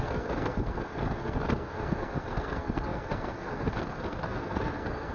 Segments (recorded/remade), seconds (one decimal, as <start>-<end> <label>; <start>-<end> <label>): 0.0-5.1 remade